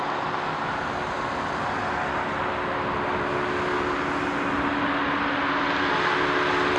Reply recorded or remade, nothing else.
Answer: recorded